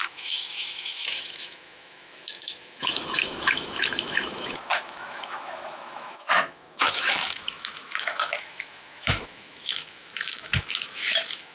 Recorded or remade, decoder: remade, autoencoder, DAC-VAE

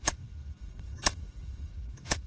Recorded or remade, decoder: remade, autoencoder, DAC-VAE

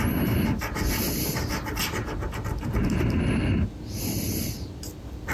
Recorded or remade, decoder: recorded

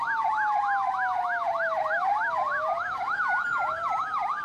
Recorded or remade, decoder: remade, autoencoder, DAC-VAE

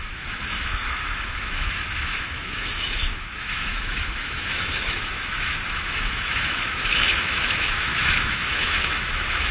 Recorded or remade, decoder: remade, autoencoder, DAC-VAE